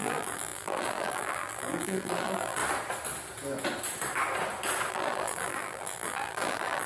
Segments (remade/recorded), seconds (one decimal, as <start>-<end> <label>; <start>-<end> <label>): 0.0-2.6 remade; 2.6-4.9 recorded; 4.9-6.9 remade